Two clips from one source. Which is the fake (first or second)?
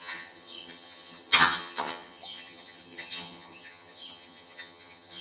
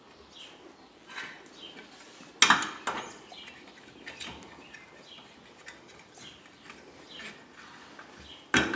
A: first